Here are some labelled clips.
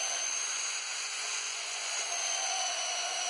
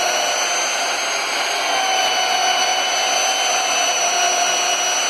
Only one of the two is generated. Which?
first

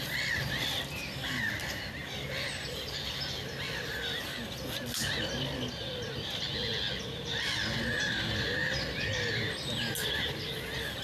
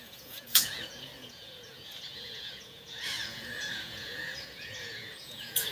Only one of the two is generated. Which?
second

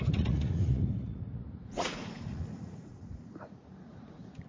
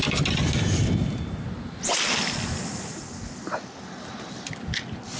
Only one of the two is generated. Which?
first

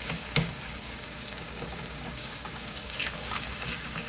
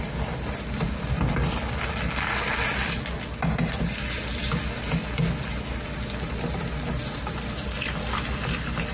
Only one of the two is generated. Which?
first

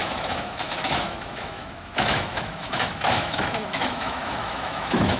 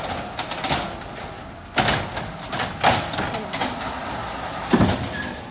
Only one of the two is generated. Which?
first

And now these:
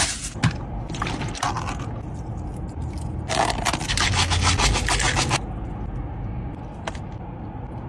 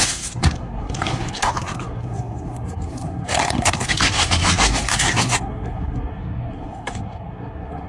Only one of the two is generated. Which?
second